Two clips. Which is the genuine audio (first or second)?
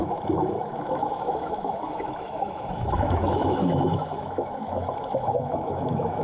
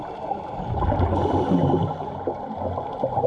second